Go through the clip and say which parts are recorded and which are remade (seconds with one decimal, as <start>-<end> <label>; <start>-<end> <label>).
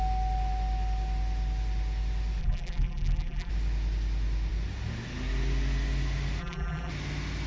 0.0-2.4 recorded; 2.4-3.5 remade; 3.5-6.4 recorded; 6.4-6.9 remade; 6.9-7.5 recorded